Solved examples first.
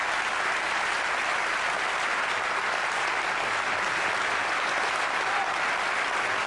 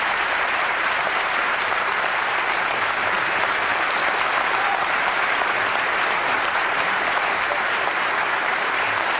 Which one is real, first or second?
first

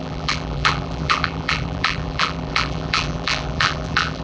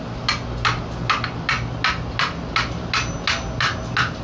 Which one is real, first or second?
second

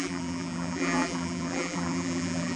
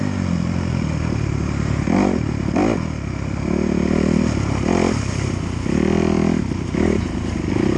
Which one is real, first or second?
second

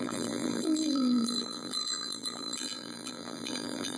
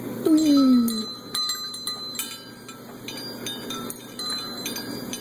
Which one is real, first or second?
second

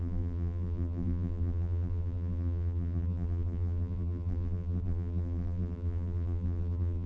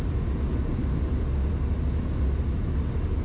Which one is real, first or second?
second